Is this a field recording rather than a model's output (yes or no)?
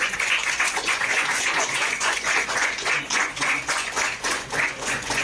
no